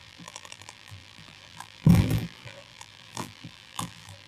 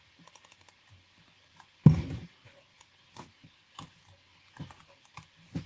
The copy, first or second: first